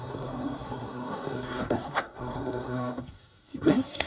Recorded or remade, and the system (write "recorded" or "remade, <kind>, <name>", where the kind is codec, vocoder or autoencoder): remade, codec, SNAC